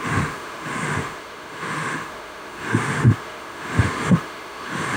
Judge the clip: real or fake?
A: fake